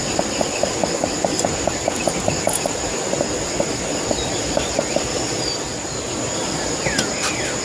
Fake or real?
real